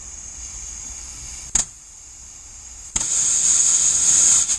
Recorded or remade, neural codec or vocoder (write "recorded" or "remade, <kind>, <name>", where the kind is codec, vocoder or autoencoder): recorded